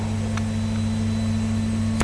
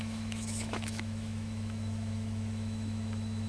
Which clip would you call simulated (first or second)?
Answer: second